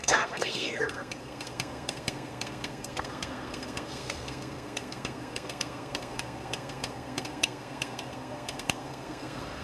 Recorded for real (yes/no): no